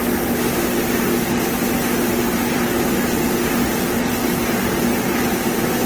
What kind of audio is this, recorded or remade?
recorded